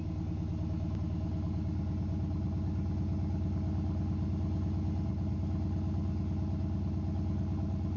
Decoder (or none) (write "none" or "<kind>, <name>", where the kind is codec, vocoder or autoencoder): none